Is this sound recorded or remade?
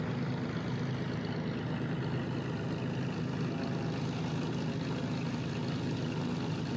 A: recorded